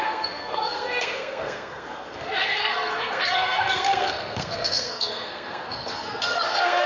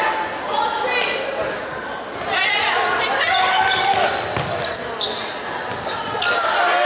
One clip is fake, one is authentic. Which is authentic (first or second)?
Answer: second